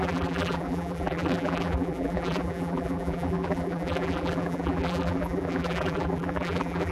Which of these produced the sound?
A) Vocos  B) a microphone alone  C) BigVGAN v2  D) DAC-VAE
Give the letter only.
C